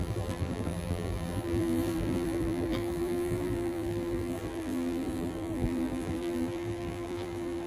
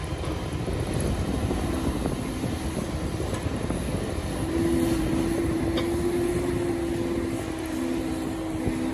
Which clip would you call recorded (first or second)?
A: second